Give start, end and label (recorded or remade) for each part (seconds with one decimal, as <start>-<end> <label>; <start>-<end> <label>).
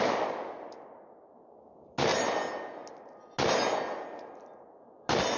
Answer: 0.0-5.4 recorded